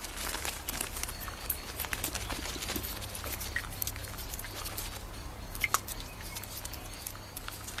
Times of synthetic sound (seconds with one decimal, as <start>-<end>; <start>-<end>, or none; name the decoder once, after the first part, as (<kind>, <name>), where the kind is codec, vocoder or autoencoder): none